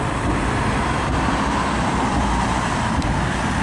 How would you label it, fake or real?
real